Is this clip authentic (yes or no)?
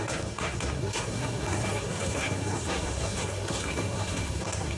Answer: no